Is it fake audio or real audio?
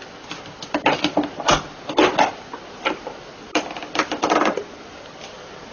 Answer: real